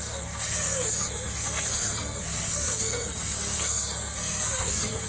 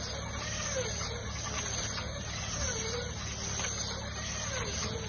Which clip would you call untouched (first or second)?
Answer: second